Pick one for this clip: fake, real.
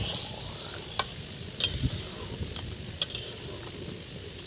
real